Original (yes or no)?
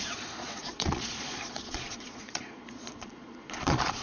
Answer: no